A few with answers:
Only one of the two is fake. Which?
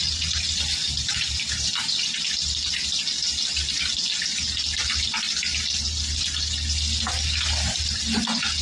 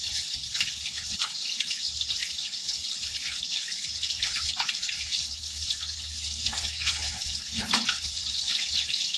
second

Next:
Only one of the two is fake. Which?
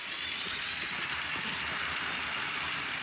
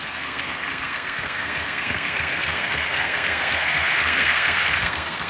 second